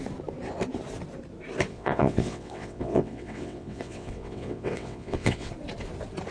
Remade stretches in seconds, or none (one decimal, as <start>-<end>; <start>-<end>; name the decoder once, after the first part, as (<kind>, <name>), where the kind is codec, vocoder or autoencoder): 1.7-5.5 (vocoder, WaveNeXt)